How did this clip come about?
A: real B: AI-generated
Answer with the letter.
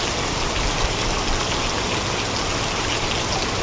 A